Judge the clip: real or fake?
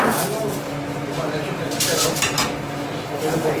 real